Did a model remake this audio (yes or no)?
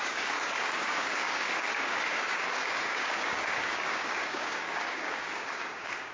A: yes